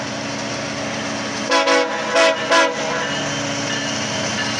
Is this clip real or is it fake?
real